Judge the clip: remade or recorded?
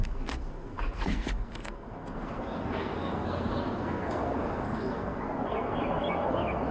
remade